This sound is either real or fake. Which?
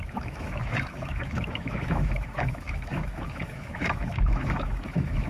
fake